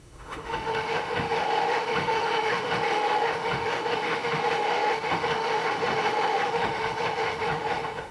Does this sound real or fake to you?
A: fake